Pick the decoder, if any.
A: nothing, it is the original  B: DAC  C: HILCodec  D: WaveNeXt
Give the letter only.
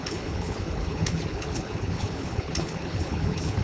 C